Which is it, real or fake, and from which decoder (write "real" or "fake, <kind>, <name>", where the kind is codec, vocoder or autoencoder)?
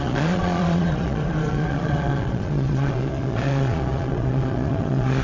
fake, vocoder, Vocos